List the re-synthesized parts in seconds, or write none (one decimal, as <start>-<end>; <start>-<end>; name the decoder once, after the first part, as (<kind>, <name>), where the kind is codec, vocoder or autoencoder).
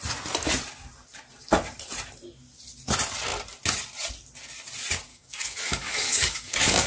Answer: 5.1-6.9 (codec, DAC)